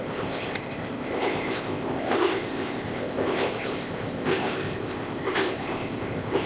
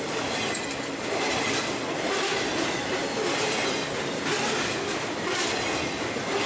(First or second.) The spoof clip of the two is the first